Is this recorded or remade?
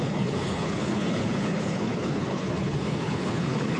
remade